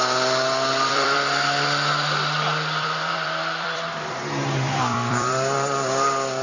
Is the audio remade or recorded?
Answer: remade